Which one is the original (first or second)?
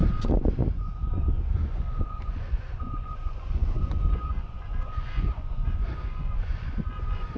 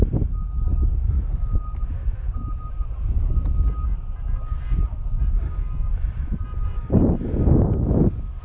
second